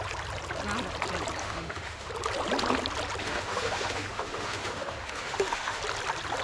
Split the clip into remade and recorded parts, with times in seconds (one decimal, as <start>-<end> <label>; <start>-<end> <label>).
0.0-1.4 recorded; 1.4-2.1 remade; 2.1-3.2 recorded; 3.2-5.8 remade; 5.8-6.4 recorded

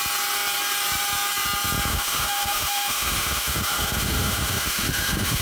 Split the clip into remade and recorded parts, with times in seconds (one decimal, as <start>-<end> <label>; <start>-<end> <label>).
0.0-1.9 recorded; 1.9-5.4 remade

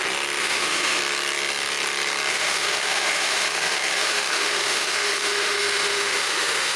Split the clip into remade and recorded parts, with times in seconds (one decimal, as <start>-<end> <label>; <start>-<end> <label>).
0.0-0.4 recorded; 0.4-1.0 remade; 1.0-2.3 recorded; 2.3-6.8 remade

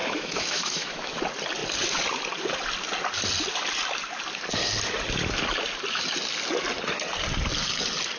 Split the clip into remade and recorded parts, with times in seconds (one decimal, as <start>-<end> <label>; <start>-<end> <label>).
0.0-1.2 remade; 1.2-8.2 recorded

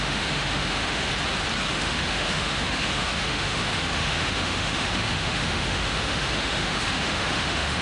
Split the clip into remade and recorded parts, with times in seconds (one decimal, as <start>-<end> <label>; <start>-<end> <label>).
0.0-1.1 remade; 1.1-1.7 recorded; 1.7-7.8 remade

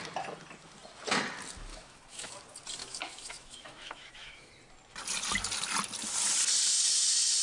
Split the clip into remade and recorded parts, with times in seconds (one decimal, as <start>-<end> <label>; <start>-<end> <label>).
0.0-1.7 recorded; 1.7-2.3 remade; 2.3-2.8 recorded; 2.8-4.5 remade; 4.5-7.4 recorded